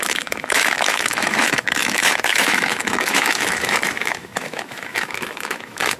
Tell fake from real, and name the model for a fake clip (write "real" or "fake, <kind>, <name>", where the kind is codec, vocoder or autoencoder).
fake, autoencoder, DAC-VAE